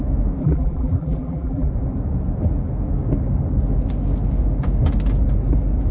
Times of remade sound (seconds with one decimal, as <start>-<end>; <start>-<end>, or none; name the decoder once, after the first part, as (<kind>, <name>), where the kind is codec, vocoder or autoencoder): 0.4-1.7 (vocoder, BigVGAN v2)